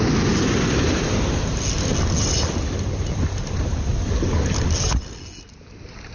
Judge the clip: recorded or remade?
recorded